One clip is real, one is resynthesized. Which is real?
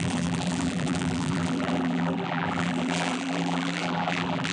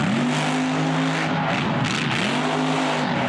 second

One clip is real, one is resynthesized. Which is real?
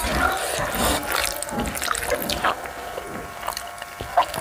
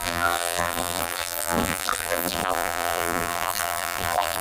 first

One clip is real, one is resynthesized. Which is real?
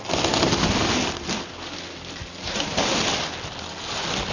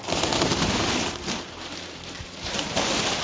first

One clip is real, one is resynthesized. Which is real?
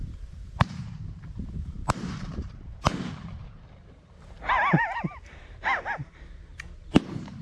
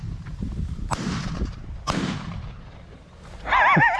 second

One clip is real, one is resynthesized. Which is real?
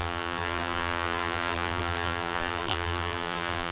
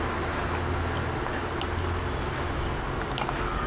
second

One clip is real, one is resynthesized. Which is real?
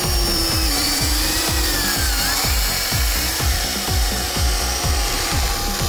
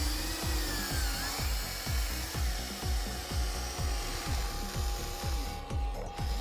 second